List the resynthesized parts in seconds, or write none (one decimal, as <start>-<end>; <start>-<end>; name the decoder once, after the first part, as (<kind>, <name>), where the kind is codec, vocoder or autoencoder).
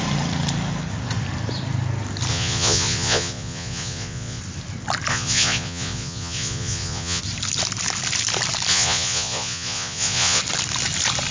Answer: 2.3-4.4 (vocoder, Vocos); 5.1-7.2; 8.7-10.4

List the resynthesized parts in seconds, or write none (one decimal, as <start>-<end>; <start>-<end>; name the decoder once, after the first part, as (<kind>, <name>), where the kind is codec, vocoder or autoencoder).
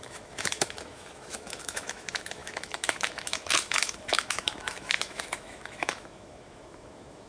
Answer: 0.0-7.3 (autoencoder, DAC-VAE)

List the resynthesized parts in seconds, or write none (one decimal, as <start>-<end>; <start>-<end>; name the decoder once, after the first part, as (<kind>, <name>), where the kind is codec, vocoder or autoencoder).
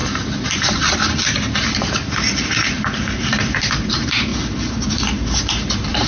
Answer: 0.0-4.3 (vocoder, BigVGAN v2); 4.9-6.1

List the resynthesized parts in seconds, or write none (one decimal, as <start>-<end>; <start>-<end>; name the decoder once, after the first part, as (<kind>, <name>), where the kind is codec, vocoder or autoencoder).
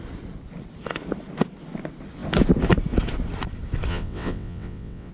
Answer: 3.9-5.1 (vocoder, WaveNeXt)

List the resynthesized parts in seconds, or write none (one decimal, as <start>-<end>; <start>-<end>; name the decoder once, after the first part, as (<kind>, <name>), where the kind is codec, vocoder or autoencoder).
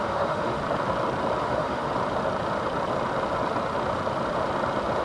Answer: 0.0-0.6 (autoencoder, DAC-VAE); 1.4-1.9